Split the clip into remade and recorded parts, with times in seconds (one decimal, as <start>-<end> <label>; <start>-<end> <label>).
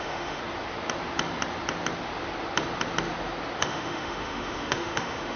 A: 0.0-0.4 remade; 0.4-3.6 recorded; 3.6-5.4 remade